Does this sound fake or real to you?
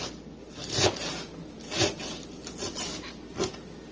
real